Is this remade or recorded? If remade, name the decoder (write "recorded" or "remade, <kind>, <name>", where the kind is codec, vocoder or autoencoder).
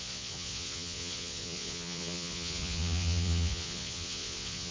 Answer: remade, vocoder, Vocos